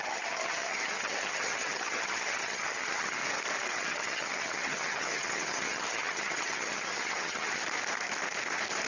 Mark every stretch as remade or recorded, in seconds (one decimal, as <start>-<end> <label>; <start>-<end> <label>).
0.0-3.2 remade; 3.2-3.7 recorded; 3.7-7.6 remade; 7.6-8.9 recorded